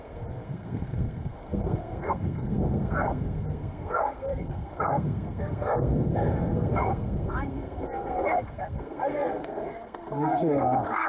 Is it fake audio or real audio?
fake